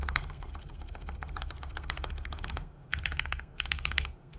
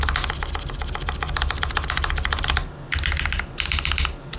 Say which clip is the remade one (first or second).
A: first